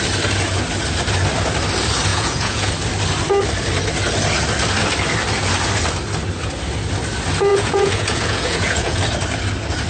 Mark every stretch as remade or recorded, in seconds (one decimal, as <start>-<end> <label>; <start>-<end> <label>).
0.0-2.1 recorded; 2.1-2.7 remade; 2.7-7.5 recorded; 7.5-9.0 remade; 9.0-9.9 recorded